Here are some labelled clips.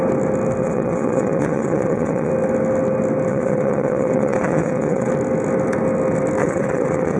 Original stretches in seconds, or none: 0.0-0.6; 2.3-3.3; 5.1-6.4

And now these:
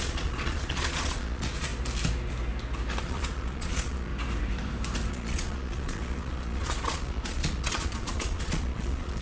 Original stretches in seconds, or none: 1.7-3.0; 4.1-5.1

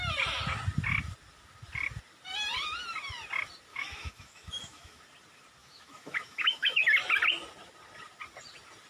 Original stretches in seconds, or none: 0.0-3.7; 5.0-5.6; 6.8-8.9

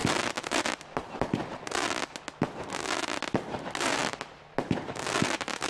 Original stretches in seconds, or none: 2.6-5.7

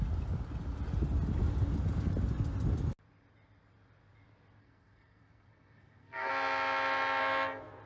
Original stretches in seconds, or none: 0.0-4.6; 6.3-7.9

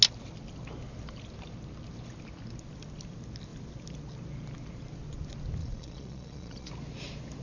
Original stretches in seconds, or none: 0.0-5.6; 6.7-7.4

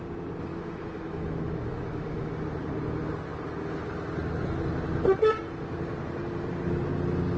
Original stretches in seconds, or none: 0.0-0.5; 2.3-7.4

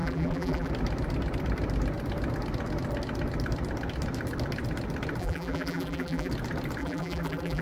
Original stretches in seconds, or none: 0.7-5.2; 6.3-6.8